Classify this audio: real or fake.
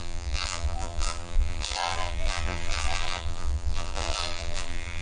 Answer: fake